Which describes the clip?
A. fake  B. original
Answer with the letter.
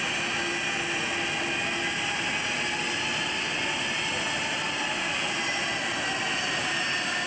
B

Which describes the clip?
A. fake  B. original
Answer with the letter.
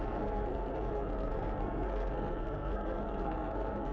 A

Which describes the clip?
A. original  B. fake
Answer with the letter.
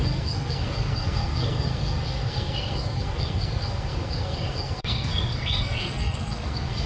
B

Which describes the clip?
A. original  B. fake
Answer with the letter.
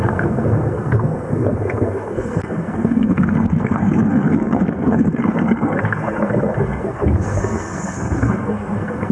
B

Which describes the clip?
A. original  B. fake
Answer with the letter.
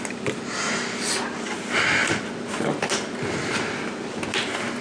A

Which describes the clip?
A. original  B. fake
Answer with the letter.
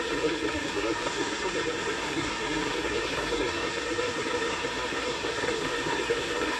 B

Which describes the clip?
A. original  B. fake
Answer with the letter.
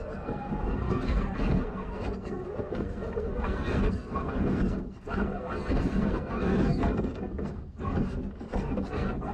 B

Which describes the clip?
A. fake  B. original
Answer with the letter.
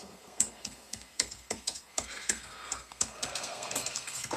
A